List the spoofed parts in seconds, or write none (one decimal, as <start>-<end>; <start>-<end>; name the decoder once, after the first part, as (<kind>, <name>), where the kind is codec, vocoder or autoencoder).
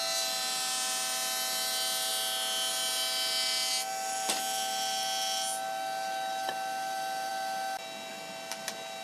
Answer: none